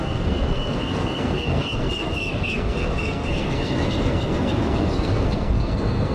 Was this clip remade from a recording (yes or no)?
yes